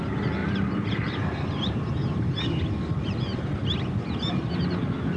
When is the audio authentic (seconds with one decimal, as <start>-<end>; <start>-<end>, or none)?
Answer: 0.0-0.4; 2.6-5.2